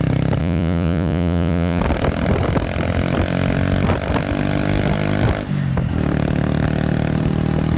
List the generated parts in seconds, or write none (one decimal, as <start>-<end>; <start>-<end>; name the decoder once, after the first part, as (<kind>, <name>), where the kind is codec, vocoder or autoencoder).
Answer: 0.4-1.8 (vocoder, Vocos)